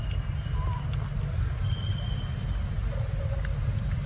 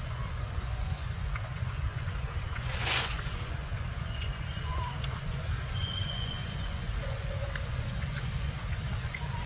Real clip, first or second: first